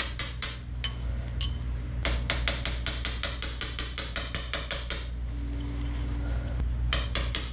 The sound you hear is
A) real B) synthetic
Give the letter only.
A